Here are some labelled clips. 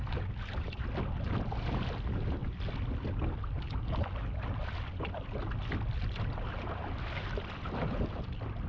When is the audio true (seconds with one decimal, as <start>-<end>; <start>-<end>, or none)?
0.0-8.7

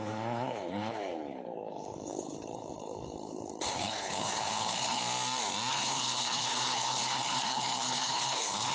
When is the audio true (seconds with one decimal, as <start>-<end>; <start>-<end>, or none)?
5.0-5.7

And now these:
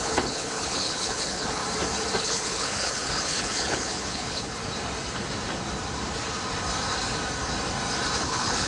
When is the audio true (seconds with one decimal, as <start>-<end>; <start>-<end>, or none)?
1.6-2.2; 4.6-8.2